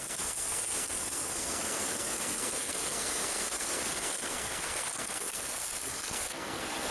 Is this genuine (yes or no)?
no